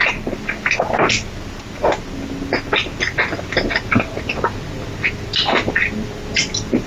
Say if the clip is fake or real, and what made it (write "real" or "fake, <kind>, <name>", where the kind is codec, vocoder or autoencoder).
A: real